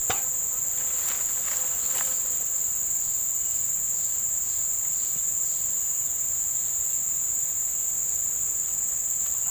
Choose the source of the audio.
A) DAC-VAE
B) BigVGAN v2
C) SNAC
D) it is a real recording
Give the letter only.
D